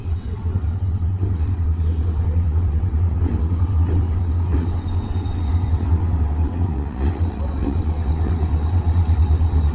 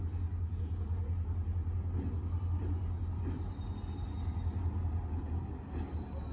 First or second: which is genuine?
second